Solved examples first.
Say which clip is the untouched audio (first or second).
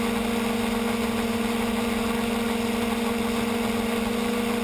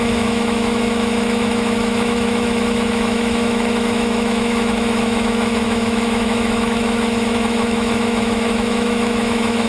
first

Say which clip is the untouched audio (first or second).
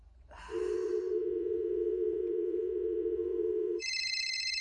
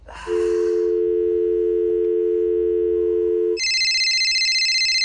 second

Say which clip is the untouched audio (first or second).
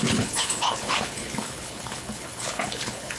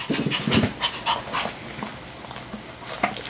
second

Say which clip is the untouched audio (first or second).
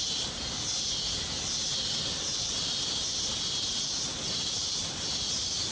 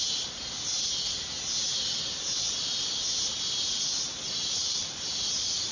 second